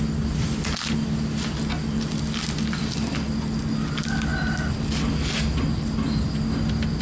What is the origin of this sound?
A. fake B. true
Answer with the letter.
B